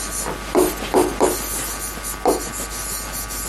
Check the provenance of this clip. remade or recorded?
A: recorded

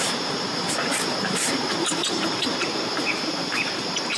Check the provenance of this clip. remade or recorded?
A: remade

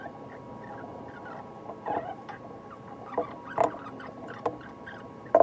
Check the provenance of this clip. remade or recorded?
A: recorded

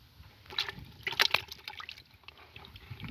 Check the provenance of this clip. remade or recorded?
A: recorded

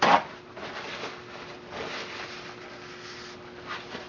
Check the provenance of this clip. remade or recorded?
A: recorded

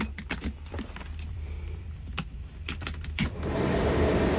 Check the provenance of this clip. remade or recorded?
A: remade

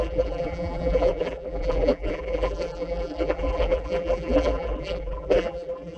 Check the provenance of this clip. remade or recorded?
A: remade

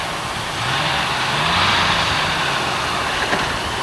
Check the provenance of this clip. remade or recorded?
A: recorded